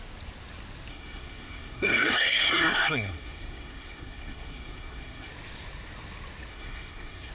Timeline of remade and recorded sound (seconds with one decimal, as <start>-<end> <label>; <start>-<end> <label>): 0.0-0.9 recorded; 0.9-5.3 remade; 5.3-6.5 recorded; 6.5-7.3 remade